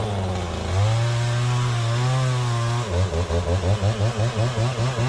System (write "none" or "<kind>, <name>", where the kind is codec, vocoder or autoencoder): none